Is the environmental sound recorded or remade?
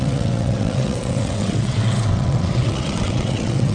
remade